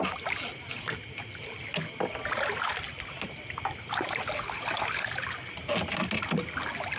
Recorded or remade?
recorded